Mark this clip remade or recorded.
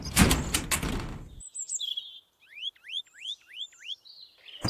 recorded